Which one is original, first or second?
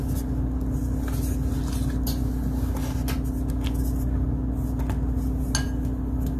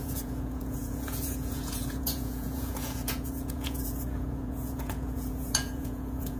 first